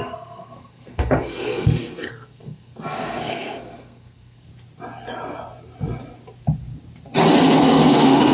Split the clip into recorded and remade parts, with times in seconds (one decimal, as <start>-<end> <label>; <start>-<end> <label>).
0.0-4.5 remade; 4.5-7.6 recorded; 7.6-8.3 remade

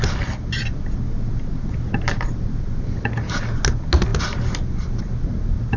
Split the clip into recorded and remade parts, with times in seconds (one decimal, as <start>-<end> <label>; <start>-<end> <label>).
0.0-5.8 recorded

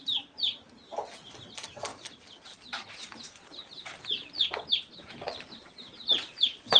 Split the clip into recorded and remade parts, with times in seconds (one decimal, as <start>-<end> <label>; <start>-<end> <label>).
0.0-6.8 recorded

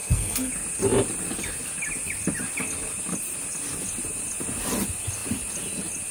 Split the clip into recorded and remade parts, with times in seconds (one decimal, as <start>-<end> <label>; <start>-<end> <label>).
0.0-0.5 remade; 0.5-6.1 recorded

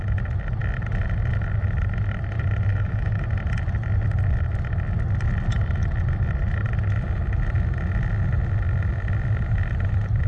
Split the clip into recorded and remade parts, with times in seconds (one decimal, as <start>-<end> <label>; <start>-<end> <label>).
0.0-2.7 recorded; 2.7-3.2 remade; 3.2-10.3 recorded

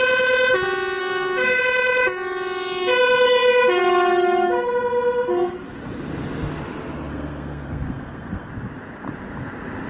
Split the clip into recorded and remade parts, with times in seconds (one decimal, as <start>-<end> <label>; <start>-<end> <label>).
0.0-1.0 recorded; 1.0-1.6 remade; 1.6-7.1 recorded; 7.1-8.5 remade; 8.5-9.9 recorded